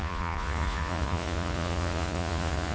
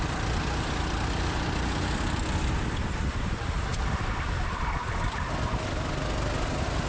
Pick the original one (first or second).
second